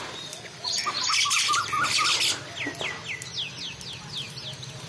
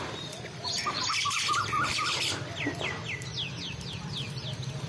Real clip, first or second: first